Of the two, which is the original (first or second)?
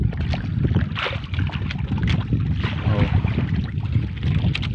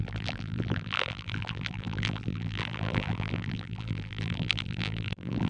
first